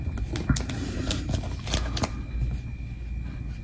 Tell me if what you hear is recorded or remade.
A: recorded